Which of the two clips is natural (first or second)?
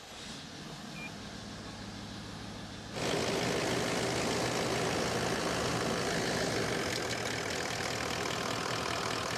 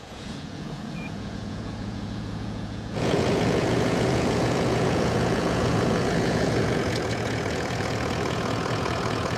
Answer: first